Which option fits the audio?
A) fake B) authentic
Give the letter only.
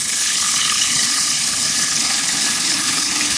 A